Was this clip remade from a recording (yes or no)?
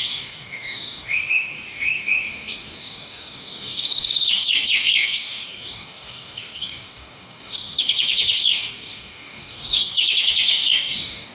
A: yes